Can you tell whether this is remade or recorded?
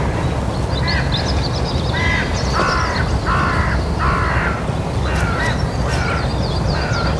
recorded